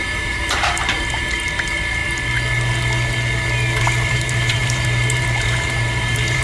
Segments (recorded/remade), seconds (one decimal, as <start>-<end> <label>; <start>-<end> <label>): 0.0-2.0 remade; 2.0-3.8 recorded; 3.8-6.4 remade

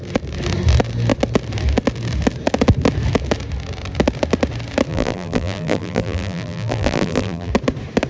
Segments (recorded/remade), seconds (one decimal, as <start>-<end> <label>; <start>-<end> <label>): 0.0-4.9 recorded; 4.9-7.5 remade; 7.5-8.1 recorded

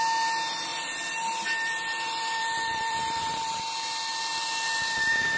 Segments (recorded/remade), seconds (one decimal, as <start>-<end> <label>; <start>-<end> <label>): 0.0-0.7 recorded; 0.7-3.5 remade; 3.5-4.3 recorded; 4.3-5.4 remade